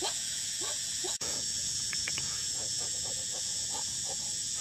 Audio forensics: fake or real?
fake